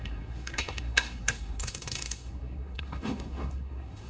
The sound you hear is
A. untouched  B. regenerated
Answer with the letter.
B